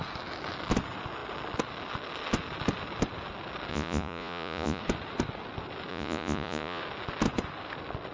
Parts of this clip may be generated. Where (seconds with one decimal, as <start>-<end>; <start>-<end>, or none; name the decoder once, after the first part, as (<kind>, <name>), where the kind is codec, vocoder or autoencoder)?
3.7-4.8 (vocoder, Vocos); 5.9-6.8